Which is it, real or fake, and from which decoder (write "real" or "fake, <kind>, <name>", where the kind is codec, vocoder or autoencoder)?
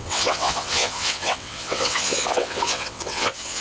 fake, vocoder, WaveNeXt